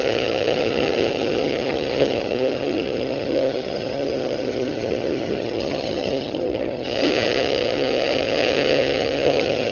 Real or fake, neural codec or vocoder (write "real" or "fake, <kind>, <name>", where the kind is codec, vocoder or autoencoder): fake, vocoder, HiFi-GAN